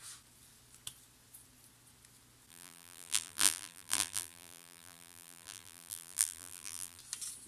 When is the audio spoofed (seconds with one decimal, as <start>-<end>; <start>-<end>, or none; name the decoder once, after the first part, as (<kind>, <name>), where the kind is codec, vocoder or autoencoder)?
2.5-7.0 (vocoder, BigVGAN v2)